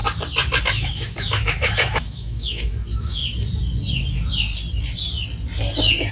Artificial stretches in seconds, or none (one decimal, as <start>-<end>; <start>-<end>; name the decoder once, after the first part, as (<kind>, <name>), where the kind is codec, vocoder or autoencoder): 0.6-3.2 (autoencoder, DAC-VAE)